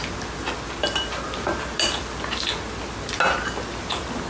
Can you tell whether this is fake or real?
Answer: real